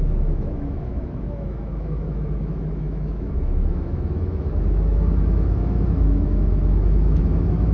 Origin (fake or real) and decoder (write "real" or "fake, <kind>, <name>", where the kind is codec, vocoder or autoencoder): fake, autoencoder, DAC-VAE